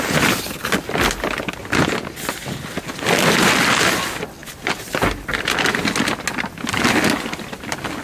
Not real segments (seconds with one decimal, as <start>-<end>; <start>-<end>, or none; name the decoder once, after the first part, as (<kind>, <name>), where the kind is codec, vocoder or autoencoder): none